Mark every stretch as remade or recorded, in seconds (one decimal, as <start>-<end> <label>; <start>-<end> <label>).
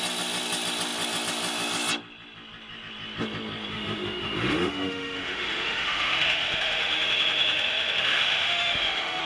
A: 0.0-3.7 recorded; 3.7-9.2 remade